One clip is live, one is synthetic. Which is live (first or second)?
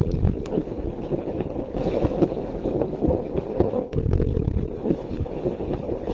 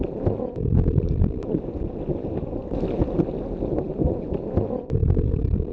second